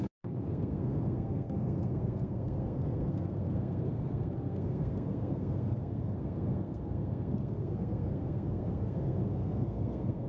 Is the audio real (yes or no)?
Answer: no